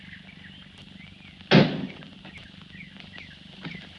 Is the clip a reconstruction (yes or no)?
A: no